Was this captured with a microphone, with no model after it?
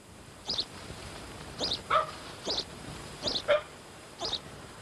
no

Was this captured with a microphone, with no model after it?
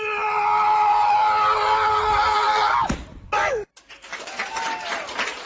yes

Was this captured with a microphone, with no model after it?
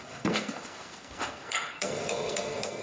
no